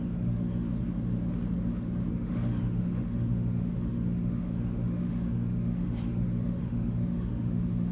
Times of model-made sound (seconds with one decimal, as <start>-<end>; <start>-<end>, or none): 0.0-0.7; 2.1-7.9